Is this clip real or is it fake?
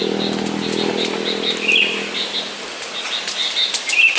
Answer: real